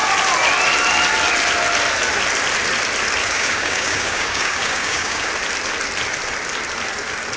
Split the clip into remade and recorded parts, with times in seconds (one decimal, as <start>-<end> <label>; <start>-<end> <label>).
0.0-3.2 recorded; 3.2-5.3 remade; 5.3-7.4 recorded